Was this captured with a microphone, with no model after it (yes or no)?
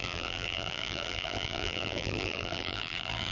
no